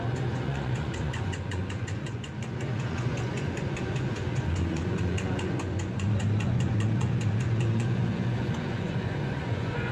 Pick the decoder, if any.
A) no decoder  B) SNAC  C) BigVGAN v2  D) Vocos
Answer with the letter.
D